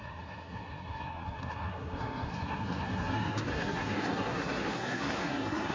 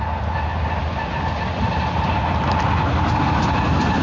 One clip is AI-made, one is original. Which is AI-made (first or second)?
first